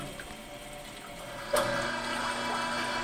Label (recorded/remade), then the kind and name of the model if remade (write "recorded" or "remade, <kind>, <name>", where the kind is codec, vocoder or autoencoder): recorded